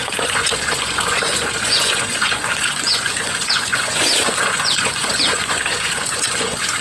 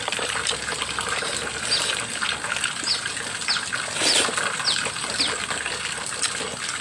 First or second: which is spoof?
first